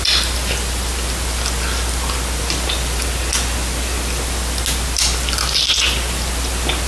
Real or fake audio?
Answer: real